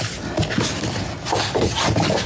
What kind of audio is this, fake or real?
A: real